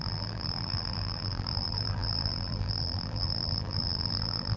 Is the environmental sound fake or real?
fake